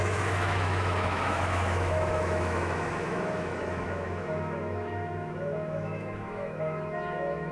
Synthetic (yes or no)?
yes